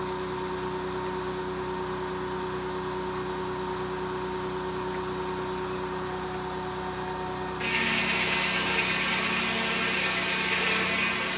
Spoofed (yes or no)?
no